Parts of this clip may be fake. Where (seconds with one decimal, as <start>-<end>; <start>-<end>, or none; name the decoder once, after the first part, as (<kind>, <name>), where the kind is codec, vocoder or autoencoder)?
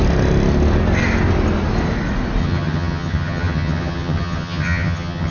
2.4-5.3 (vocoder, HiFi-GAN)